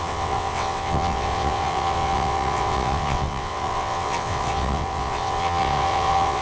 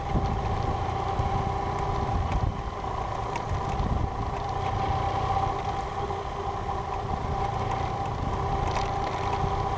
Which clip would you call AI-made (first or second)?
first